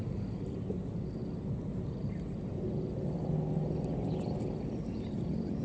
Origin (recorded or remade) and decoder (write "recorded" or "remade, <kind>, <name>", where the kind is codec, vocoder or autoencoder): recorded